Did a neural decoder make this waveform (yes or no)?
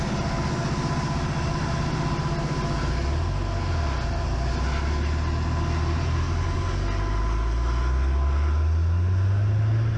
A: no